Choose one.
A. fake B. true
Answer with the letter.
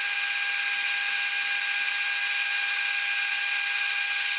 B